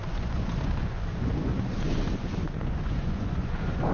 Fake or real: fake